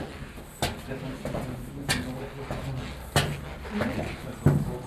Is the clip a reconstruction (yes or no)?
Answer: no